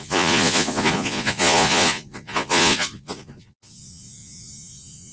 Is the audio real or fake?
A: fake